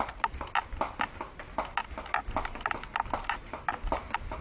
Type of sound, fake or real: real